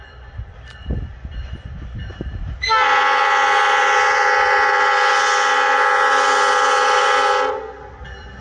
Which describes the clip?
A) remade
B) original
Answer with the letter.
B